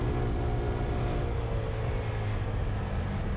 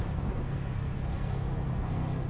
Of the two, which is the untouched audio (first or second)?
first